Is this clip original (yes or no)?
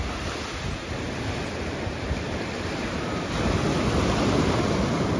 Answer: yes